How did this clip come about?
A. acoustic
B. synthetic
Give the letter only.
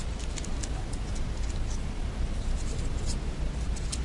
A